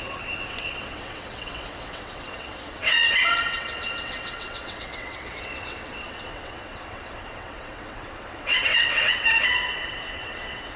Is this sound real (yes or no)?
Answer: no